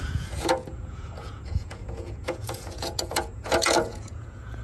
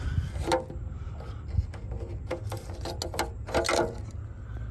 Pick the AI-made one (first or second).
first